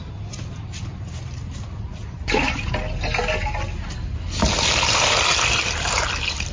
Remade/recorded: recorded